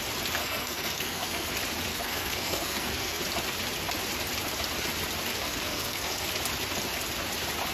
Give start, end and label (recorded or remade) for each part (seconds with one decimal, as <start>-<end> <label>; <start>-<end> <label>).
0.0-0.4 recorded; 0.4-1.5 remade; 1.5-1.9 recorded; 1.9-3.2 remade; 3.2-5.3 recorded; 5.3-6.3 remade; 6.3-7.7 recorded